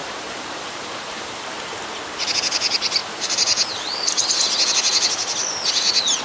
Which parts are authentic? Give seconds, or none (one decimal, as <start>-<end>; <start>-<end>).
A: 1.4-3.0; 3.7-6.2